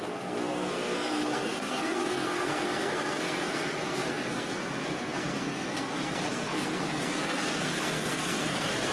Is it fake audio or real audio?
fake